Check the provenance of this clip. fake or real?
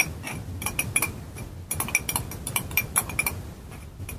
real